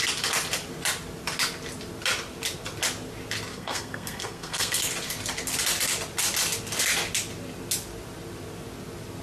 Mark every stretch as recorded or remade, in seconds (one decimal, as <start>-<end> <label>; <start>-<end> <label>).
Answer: 0.0-3.5 recorded; 3.5-4.8 remade; 4.8-9.2 recorded